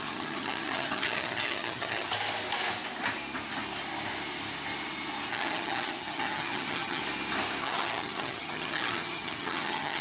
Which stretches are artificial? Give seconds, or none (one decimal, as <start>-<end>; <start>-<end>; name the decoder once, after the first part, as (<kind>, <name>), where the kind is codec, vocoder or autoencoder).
0.0-2.1 (vocoder, HiFi-GAN); 5.3-7.0; 7.6-10.0